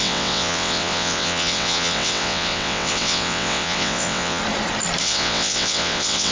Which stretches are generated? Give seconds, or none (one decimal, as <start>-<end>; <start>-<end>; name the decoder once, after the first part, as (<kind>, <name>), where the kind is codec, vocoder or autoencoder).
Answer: 0.0-4.4 (vocoder, WaveNeXt); 5.0-6.3